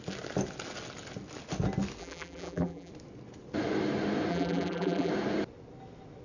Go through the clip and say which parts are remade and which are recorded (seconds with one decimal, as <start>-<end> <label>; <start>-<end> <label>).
0.0-2.0 recorded; 2.0-2.9 remade; 2.9-4.3 recorded; 4.3-5.1 remade; 5.1-6.2 recorded